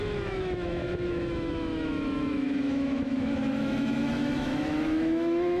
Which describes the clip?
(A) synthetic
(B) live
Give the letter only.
A